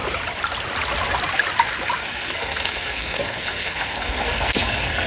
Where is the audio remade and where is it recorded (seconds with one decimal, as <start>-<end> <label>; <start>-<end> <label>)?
0.0-2.0 recorded; 2.0-5.1 remade